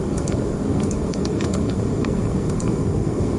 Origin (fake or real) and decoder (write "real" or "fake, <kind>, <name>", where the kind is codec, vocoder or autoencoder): fake, codec, SNAC